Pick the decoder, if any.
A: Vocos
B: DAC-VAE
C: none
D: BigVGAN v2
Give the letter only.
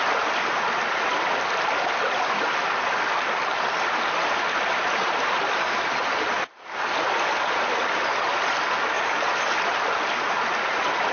C